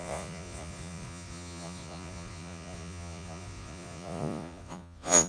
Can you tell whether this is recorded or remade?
remade